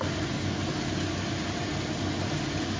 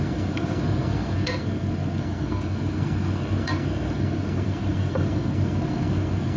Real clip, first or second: first